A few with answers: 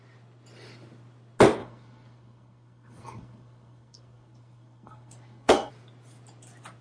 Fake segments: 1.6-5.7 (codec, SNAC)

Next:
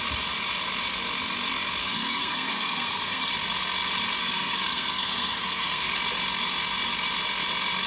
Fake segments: 1.8-3.3 (codec, SNAC); 4.2-5.9